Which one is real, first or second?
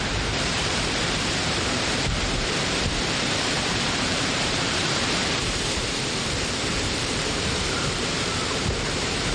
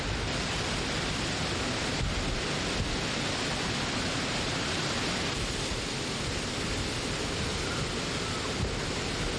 second